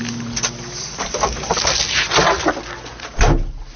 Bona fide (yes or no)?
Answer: yes